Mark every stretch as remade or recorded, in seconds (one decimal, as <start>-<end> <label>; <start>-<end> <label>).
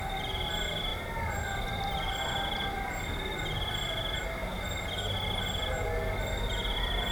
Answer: 0.0-0.9 recorded; 0.9-2.9 remade; 2.9-7.1 recorded